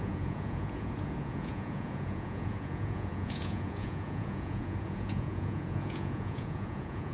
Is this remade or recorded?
remade